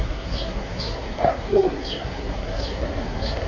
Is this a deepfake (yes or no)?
yes